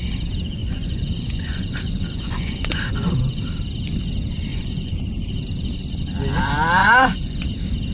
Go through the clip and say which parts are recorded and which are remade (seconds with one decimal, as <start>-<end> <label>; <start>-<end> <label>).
0.0-0.6 recorded; 0.6-3.1 remade; 3.1-4.5 recorded; 4.5-5.0 remade; 5.0-6.8 recorded; 6.8-7.4 remade; 7.4-7.9 recorded